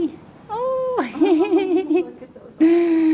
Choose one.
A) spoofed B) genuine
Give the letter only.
B